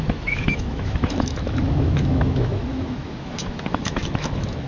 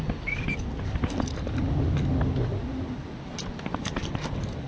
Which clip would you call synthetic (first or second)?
first